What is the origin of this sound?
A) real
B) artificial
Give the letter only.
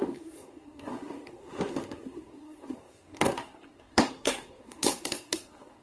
B